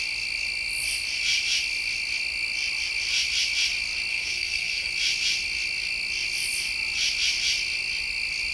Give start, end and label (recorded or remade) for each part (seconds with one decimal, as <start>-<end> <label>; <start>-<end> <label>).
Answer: 0.0-4.1 recorded; 4.1-4.9 remade; 4.9-8.5 recorded